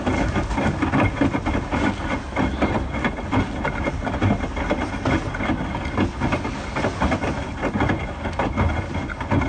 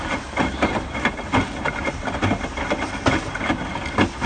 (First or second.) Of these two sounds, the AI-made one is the second